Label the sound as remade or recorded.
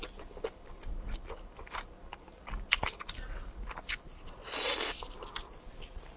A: recorded